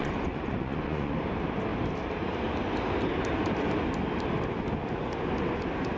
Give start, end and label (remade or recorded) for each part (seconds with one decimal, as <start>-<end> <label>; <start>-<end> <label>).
0.0-1.1 remade; 1.1-6.0 recorded